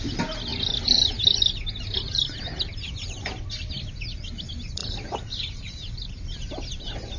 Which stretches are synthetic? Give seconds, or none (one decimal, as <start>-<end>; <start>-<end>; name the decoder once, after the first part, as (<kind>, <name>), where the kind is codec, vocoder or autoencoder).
none